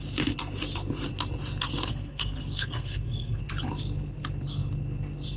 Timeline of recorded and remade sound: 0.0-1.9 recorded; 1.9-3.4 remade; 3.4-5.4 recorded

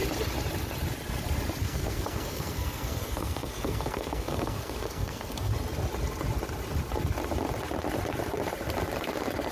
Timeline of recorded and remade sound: 0.0-1.6 recorded; 1.6-5.5 remade; 5.5-9.5 recorded

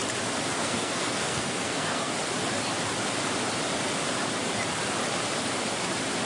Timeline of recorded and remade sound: 0.0-0.5 recorded; 0.5-2.1 remade; 2.1-6.3 recorded